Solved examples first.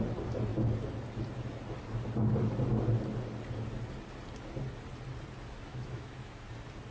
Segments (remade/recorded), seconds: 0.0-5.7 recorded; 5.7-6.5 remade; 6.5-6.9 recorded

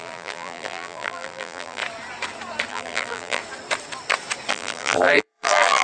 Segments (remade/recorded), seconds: 0.0-1.8 remade; 1.8-2.7 recorded; 2.7-3.4 remade; 3.4-4.5 recorded; 4.5-5.8 remade